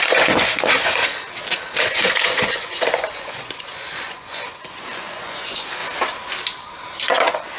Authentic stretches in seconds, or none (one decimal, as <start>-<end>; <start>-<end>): 1.0-1.8; 5.8-7.1